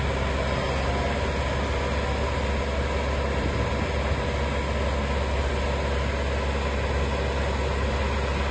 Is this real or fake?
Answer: real